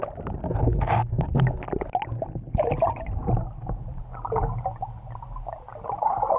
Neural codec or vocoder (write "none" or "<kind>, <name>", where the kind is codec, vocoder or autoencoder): none